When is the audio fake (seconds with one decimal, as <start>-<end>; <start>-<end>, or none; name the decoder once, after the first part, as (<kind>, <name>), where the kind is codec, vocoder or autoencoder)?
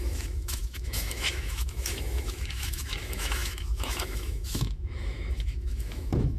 0.0-6.4 (autoencoder, DAC-VAE)